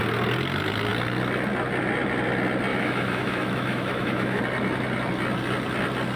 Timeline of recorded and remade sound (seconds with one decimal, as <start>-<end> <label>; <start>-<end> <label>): 0.0-2.7 recorded; 2.7-4.4 remade; 4.4-6.2 recorded